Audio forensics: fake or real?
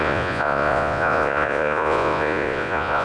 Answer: fake